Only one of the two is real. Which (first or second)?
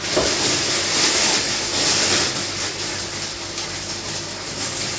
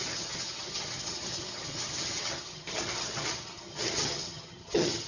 first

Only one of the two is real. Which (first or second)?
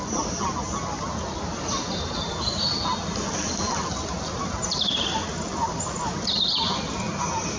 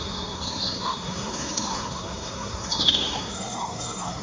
first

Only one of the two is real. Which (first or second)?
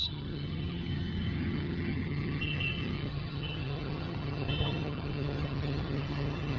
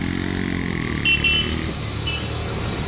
second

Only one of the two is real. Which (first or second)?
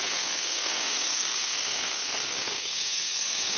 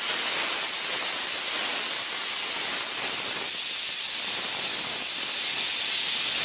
second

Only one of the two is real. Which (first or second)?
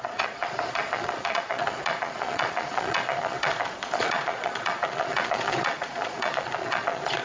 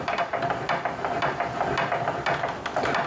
second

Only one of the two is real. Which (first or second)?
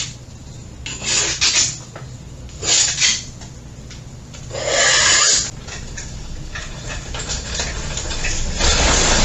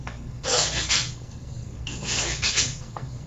first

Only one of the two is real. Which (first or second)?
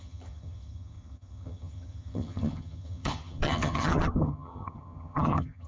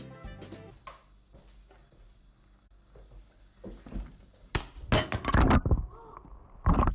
second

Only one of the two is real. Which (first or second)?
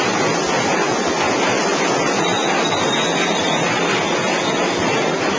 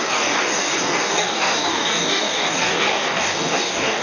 first